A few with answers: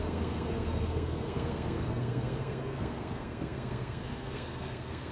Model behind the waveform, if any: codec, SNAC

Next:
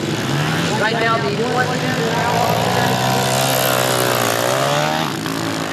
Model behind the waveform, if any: none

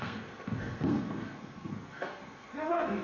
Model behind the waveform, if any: codec, SNAC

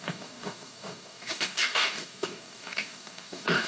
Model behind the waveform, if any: codec, DAC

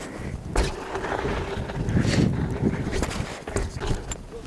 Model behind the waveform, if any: none